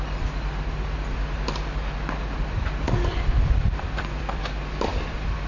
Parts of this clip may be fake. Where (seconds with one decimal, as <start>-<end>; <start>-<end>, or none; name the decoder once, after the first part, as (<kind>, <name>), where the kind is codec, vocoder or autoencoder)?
3.3-4.4 (vocoder, BigVGAN v2); 4.9-5.5